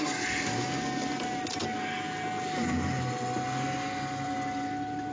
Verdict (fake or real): real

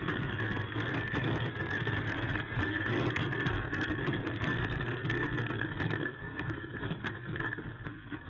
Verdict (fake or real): fake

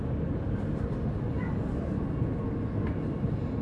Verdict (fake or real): real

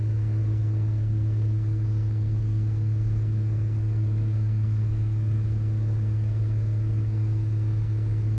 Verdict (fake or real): fake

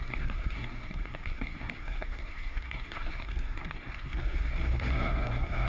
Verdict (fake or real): fake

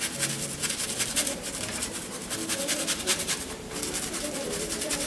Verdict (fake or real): fake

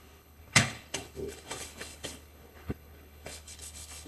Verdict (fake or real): fake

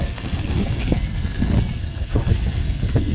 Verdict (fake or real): fake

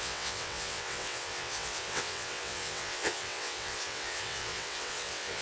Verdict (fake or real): fake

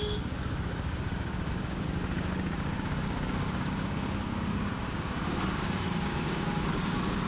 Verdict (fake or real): fake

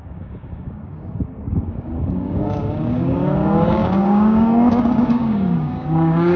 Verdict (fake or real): fake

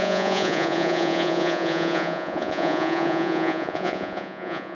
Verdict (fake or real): fake